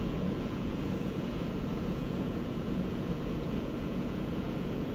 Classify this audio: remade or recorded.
remade